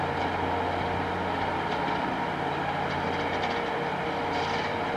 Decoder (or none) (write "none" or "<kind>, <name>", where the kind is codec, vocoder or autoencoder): none